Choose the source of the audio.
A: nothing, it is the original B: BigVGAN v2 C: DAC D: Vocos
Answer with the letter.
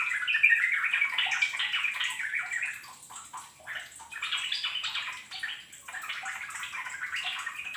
A